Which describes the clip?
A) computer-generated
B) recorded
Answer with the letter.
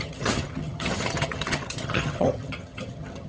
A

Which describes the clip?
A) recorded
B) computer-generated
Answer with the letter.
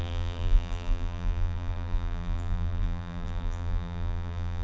B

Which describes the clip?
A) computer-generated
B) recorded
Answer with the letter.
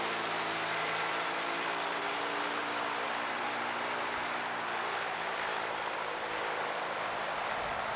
B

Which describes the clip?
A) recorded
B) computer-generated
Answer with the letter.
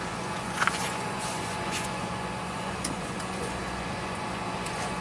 B